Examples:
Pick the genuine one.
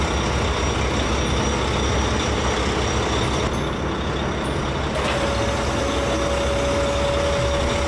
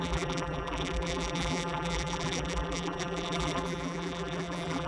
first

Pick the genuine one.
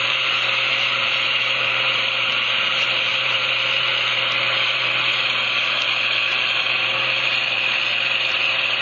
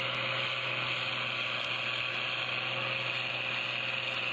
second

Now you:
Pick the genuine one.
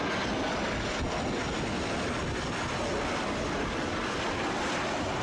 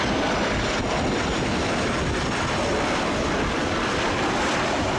first